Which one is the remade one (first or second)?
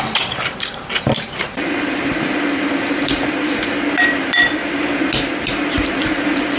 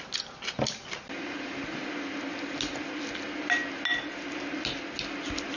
first